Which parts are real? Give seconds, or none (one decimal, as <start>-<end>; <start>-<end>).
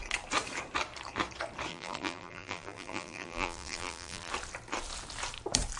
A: 0.0-1.7; 4.3-5.8